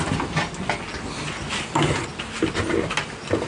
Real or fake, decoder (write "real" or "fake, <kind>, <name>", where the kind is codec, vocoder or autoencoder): real